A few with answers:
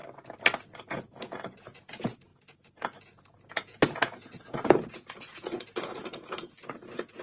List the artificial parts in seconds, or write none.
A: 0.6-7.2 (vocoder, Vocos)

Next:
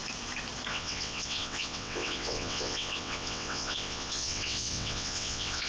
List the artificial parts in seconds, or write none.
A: 0.7-5.7 (vocoder, WaveNeXt)

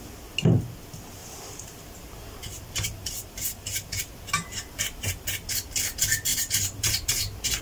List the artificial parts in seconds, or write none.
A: 1.2-5.5 (vocoder, BigVGAN v2); 6.3-7.6